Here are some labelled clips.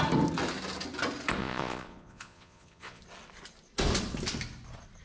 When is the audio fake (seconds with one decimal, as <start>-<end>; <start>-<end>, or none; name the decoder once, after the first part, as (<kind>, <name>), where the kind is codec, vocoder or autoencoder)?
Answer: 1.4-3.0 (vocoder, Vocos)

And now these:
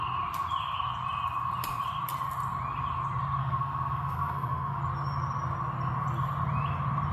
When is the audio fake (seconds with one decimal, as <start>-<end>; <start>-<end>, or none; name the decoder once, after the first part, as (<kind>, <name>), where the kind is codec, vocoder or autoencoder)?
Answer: 3.4-4.8 (codec, SNAC)

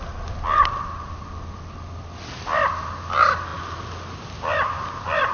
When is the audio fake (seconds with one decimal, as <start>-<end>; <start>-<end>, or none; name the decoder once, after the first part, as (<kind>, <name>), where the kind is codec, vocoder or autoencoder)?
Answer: none

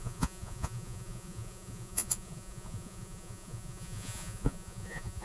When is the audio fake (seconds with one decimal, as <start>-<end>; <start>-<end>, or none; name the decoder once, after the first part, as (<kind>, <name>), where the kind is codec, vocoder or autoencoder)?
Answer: 0.0-5.2 (vocoder, Vocos)